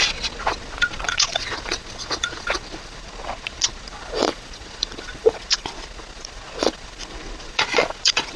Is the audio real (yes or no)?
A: no